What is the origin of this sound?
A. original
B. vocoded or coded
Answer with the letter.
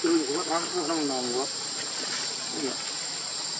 A